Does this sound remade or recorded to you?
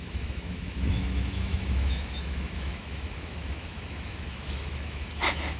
remade